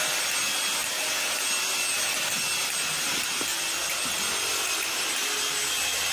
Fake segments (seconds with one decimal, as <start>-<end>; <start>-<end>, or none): none